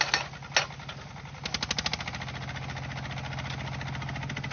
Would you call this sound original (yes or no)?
yes